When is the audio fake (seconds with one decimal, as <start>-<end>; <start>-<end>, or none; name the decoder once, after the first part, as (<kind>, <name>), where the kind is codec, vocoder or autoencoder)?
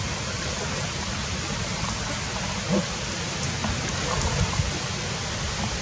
none